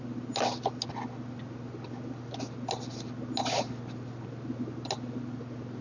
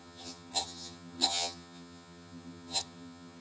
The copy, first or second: second